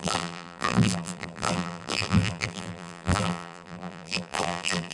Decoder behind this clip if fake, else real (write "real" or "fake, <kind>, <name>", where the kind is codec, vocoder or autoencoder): fake, vocoder, BigVGAN v2